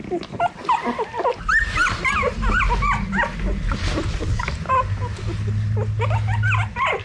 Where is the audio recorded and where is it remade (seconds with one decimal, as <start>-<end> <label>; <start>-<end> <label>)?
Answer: 0.0-1.3 recorded; 1.3-2.6 remade; 2.6-7.0 recorded